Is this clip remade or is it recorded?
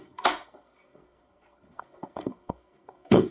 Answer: remade